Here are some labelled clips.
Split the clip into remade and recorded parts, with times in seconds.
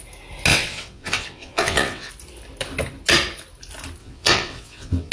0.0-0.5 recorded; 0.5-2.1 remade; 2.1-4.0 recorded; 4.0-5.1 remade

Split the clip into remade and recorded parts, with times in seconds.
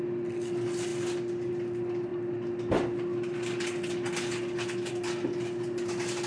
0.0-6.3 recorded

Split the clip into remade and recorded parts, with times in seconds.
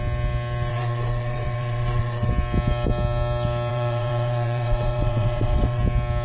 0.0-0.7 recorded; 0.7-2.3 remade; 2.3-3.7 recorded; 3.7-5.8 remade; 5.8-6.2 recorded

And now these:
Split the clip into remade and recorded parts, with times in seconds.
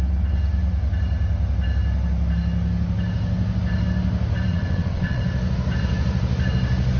0.0-4.5 recorded; 4.5-5.2 remade; 5.2-7.0 recorded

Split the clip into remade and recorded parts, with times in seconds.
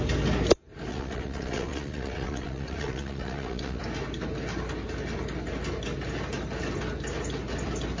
0.0-0.9 recorded; 0.9-3.8 remade; 3.8-8.0 recorded